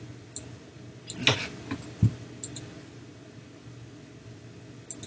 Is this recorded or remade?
recorded